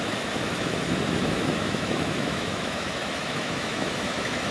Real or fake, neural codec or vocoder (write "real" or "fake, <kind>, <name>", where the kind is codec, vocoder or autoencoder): fake, autoencoder, DAC-VAE